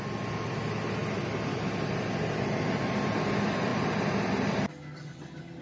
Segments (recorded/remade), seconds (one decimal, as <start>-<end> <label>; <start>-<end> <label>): 0.0-5.6 recorded